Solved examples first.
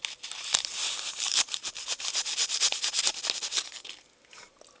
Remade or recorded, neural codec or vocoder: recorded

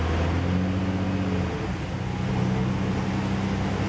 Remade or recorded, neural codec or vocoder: recorded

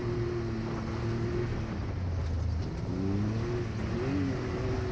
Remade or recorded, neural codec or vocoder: recorded